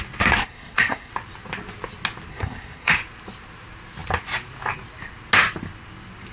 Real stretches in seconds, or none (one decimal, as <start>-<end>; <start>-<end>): 0.0-0.4; 1.1-2.3; 2.9-6.3